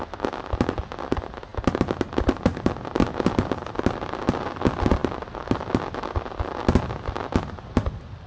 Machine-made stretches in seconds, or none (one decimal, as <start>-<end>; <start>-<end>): none